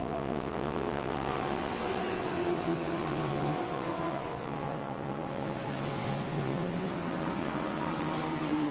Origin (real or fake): fake